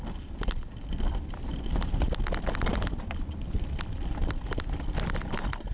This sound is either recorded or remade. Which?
recorded